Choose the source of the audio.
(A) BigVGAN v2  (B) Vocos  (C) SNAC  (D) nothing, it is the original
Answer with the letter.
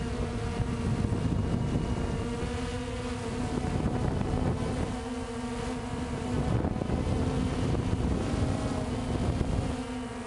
D